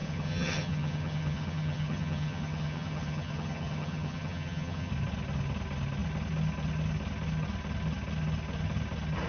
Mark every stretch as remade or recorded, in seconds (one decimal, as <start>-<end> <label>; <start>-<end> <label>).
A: 0.0-4.9 remade; 4.9-9.3 recorded